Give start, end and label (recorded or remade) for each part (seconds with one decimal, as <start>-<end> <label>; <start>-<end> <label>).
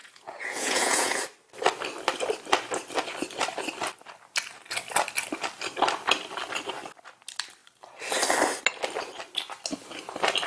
0.0-1.2 remade; 1.2-10.5 recorded